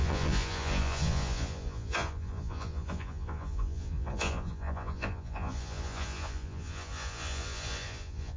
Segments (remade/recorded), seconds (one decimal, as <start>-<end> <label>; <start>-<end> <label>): 0.0-8.4 remade